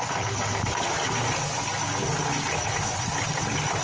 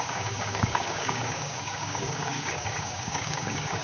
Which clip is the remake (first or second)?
second